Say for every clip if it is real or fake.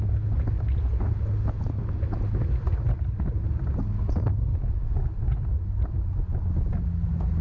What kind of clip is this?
real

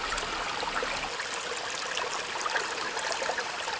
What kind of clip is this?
real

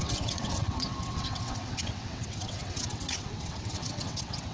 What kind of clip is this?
fake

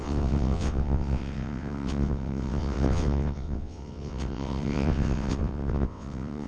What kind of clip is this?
fake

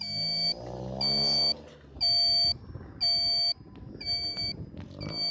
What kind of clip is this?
real